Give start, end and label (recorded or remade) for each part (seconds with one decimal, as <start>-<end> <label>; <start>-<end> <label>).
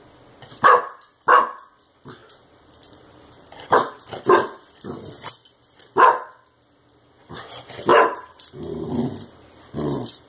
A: 0.0-2.2 recorded; 2.2-4.2 remade; 4.2-7.9 recorded; 7.9-8.9 remade; 8.9-10.3 recorded